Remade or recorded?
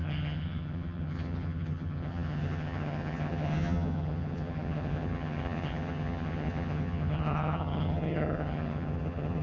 remade